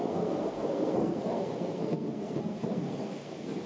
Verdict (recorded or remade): remade